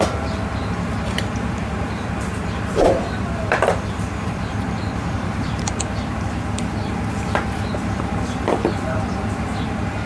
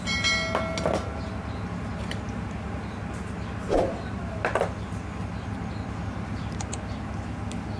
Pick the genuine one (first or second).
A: second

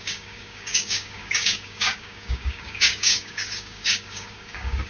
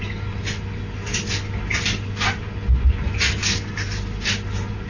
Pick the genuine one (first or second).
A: second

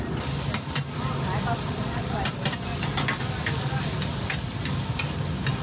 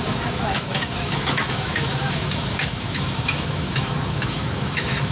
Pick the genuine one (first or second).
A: first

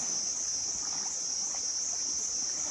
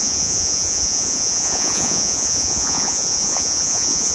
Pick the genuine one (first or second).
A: first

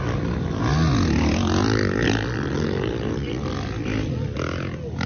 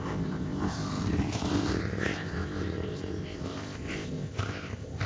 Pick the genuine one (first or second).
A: first